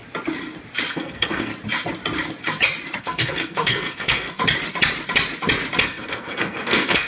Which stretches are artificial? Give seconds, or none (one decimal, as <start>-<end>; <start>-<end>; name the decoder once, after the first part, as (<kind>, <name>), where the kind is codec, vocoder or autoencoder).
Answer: 0.9-1.5 (codec, SNAC); 3.0-4.4; 5.8-7.1